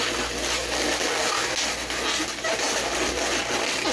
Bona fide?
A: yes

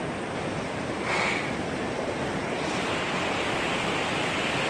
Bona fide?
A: yes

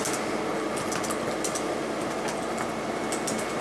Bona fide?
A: yes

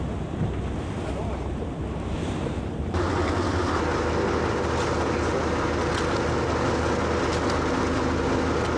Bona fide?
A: yes